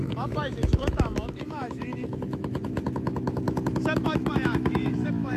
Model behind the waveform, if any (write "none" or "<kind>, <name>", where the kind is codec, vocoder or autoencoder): autoencoder, DAC-VAE